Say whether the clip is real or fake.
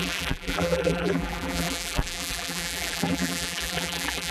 fake